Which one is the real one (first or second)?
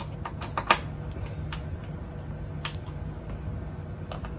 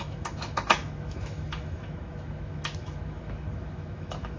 first